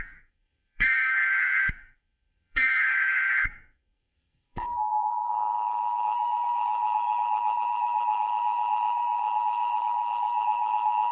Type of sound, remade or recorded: remade